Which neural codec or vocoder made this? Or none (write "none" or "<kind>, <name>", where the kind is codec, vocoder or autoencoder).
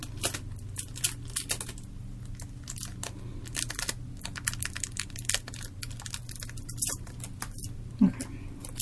none